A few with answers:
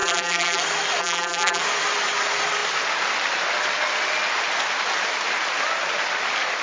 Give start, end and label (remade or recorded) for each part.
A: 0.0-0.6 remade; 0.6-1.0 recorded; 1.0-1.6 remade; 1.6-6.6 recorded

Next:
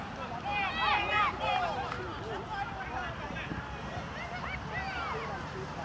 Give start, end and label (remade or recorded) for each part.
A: 0.0-0.5 recorded; 0.5-4.0 remade; 4.0-5.8 recorded